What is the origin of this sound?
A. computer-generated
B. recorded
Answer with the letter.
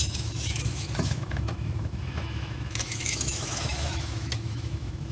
A